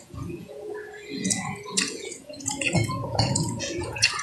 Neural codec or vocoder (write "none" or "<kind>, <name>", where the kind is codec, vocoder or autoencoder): vocoder, Vocos